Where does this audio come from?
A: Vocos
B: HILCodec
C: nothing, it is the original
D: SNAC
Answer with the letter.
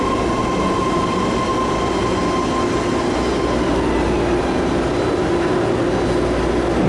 C